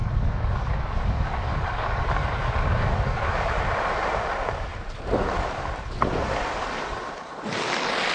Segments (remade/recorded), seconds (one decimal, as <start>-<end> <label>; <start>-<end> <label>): 0.0-3.5 remade; 3.5-8.1 recorded